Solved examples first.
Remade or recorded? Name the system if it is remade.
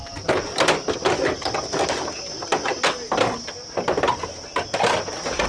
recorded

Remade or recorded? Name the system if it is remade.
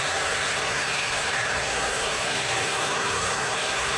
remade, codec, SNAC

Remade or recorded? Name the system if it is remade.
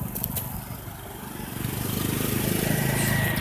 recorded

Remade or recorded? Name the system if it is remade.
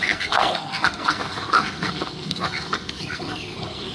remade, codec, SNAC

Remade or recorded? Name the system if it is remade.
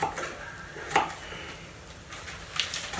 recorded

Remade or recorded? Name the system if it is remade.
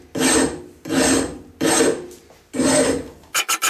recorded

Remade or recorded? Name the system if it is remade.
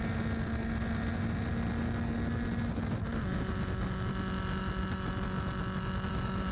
recorded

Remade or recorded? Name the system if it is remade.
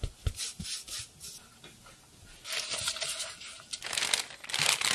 recorded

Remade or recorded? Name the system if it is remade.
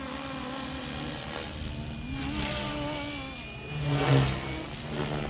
recorded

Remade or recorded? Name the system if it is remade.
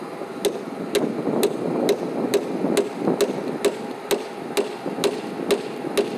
recorded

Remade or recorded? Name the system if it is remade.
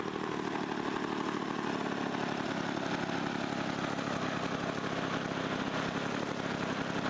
recorded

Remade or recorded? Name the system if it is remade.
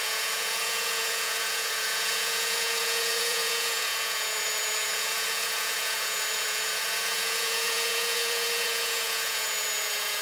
remade, vocoder, Vocos